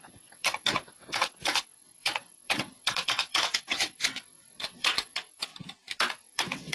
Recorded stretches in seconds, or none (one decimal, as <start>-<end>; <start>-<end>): 5.5-6.1